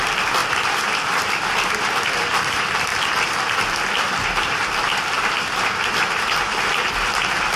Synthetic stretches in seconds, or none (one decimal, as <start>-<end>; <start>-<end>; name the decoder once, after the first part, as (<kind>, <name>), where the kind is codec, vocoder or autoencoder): 0.0-0.4 (vocoder, BigVGAN v2); 2.0-2.9; 5.3-7.6